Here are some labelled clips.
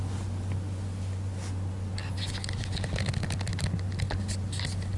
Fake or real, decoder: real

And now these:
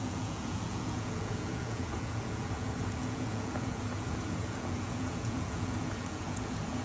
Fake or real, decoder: fake, vocoder, Vocos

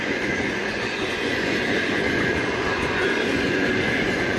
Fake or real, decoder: fake, vocoder, Vocos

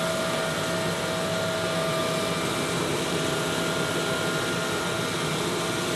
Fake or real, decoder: real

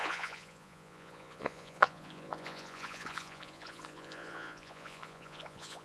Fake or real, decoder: fake, vocoder, Vocos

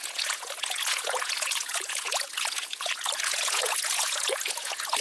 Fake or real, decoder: fake, vocoder, Vocos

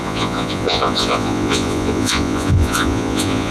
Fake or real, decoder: fake, vocoder, Vocos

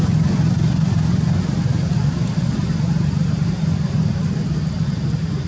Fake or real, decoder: real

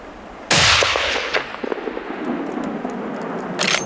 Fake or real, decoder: real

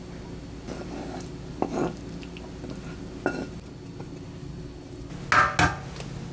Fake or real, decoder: real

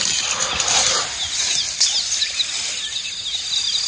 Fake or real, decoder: real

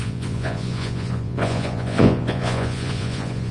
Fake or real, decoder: fake, vocoder, Vocos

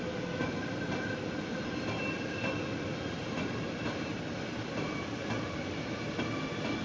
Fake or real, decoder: real